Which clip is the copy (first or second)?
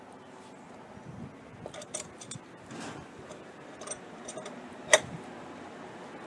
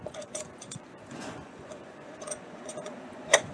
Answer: second